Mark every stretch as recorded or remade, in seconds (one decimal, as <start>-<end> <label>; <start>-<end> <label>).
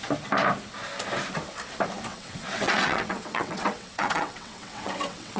0.0-2.1 recorded; 2.1-5.4 remade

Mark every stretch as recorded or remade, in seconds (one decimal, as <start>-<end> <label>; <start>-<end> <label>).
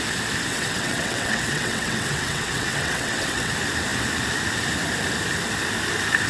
0.0-0.5 recorded; 0.5-3.5 remade; 3.5-6.3 recorded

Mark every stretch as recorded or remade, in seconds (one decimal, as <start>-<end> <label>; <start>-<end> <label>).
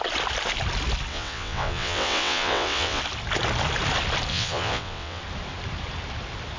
0.0-1.1 recorded; 1.1-3.0 remade; 3.0-4.3 recorded; 4.3-5.2 remade; 5.2-6.6 recorded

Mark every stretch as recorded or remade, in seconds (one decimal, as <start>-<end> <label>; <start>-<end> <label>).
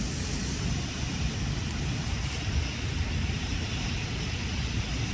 0.0-5.1 recorded